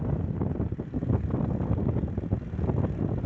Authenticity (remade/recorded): recorded